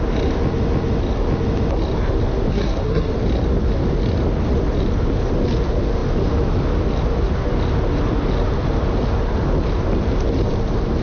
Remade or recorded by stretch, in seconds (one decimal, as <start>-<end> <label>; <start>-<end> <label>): 0.0-2.5 recorded; 2.5-3.1 remade; 3.1-11.0 recorded